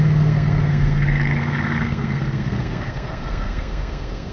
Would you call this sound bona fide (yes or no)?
no